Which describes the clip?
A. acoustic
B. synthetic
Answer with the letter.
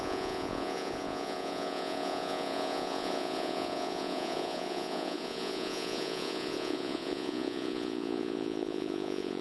B